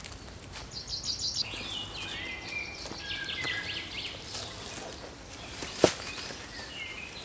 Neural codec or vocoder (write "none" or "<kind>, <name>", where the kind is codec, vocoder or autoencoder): none